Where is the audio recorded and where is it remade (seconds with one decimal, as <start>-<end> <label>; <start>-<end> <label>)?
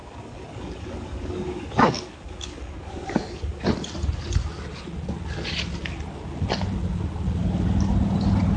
0.0-3.6 remade; 3.6-8.6 recorded